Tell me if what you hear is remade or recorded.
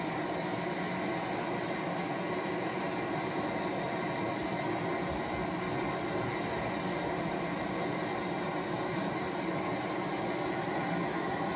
recorded